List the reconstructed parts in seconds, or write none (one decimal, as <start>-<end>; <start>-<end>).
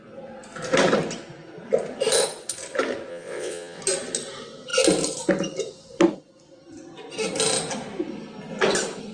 3.1-3.8